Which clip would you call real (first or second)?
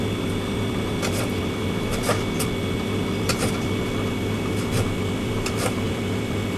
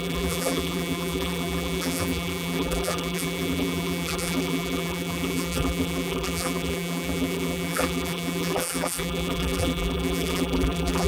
first